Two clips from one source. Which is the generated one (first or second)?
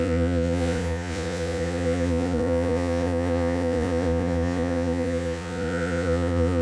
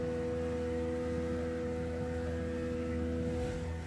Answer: first